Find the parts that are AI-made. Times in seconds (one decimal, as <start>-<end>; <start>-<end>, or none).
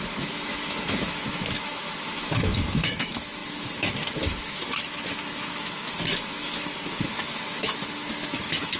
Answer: 0.0-8.8